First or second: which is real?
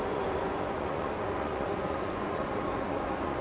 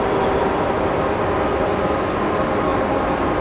second